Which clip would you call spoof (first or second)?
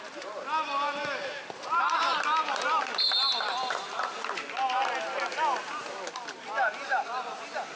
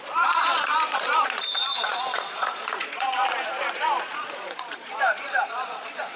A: second